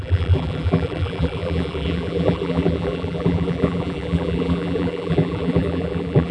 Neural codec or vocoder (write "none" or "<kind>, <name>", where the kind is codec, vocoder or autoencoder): vocoder, BigVGAN v2